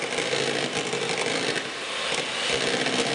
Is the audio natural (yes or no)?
yes